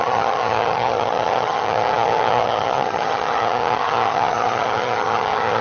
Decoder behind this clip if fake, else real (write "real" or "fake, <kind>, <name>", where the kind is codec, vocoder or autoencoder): fake, vocoder, HiFi-GAN